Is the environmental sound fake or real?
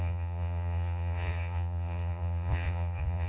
fake